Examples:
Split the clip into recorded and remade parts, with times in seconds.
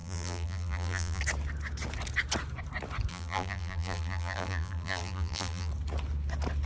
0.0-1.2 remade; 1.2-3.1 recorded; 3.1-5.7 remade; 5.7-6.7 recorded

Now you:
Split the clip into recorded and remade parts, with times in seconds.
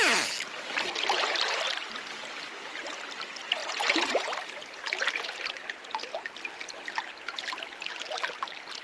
0.0-3.6 recorded; 3.6-5.5 remade; 5.5-8.8 recorded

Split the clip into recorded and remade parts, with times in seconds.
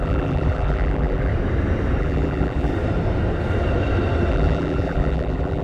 0.0-1.3 remade; 1.3-2.0 recorded; 2.0-2.7 remade; 2.7-4.3 recorded; 4.3-5.6 remade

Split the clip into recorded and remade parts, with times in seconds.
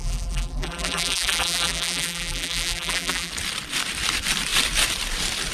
0.0-3.3 remade; 3.3-5.5 recorded